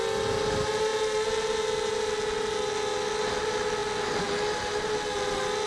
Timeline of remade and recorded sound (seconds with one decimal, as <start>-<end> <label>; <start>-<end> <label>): 0.0-5.7 recorded